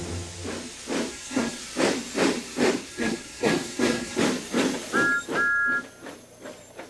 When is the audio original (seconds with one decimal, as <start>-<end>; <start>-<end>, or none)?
0.0-1.1; 1.6-2.9; 4.2-6.9